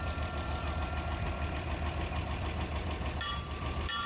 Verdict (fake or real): fake